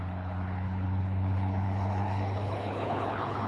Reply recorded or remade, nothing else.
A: remade